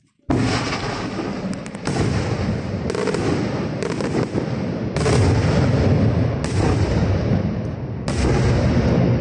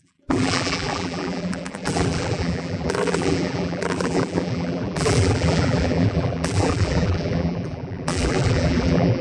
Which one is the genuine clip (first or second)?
first